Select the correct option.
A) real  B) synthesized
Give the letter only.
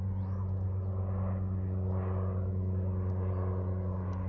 A